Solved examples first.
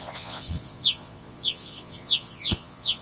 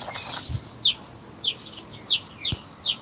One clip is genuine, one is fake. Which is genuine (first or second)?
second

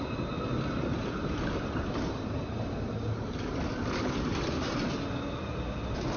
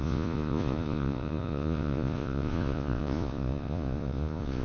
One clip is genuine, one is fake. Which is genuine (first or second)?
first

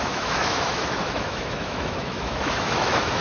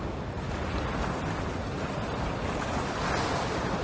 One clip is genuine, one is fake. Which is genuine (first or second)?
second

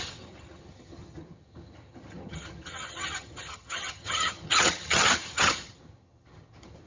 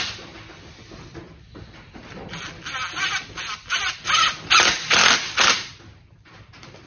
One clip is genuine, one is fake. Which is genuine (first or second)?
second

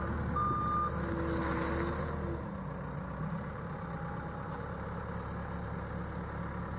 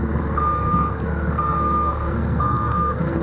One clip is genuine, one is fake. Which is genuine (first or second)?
first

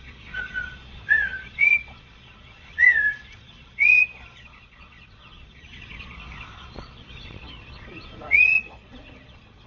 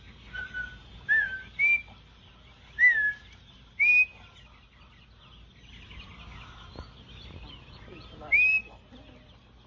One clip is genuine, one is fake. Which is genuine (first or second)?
second